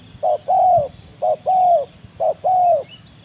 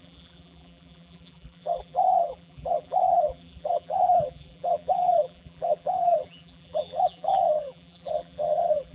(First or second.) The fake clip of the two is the second